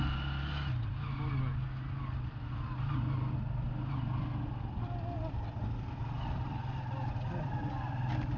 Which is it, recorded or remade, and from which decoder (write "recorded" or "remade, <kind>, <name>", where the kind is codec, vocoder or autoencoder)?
recorded